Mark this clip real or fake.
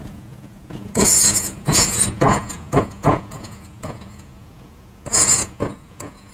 fake